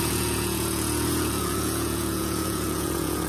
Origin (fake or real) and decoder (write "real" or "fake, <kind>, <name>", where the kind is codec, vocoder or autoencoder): fake, vocoder, Vocos